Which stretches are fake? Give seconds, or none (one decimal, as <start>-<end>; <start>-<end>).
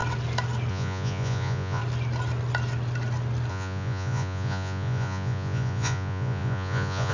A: 0.7-1.8; 3.5-7.1